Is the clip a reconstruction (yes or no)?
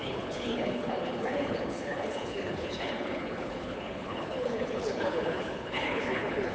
yes